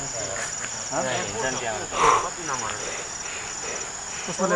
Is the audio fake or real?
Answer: real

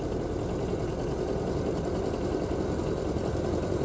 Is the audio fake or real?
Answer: real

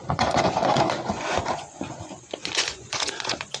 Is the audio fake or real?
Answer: fake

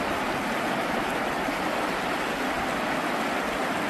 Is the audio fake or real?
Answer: real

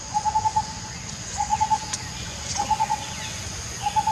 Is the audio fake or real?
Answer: fake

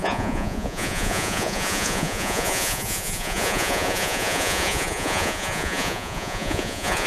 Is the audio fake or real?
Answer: fake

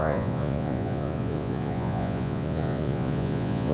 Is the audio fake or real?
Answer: fake